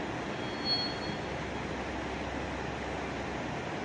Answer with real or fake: real